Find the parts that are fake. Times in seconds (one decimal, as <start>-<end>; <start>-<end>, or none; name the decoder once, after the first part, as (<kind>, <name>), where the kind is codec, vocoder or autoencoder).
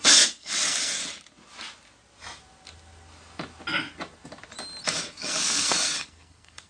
0.0-1.0 (codec, SNAC); 5.0-6.7